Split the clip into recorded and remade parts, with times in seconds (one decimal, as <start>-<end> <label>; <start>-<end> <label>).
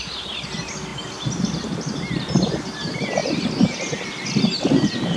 0.0-5.2 recorded